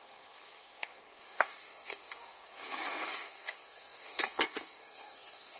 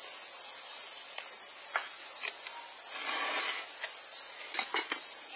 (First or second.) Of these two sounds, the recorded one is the second